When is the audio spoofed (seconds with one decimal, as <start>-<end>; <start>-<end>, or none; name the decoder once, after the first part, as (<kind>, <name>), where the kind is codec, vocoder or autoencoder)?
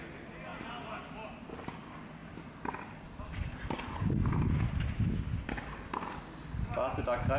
none